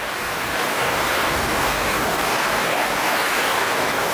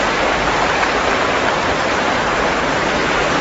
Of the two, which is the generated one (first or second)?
first